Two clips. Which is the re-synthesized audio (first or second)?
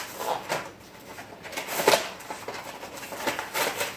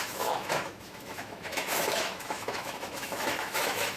second